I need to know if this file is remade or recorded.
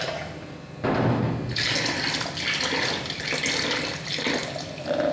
recorded